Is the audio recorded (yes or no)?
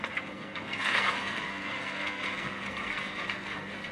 no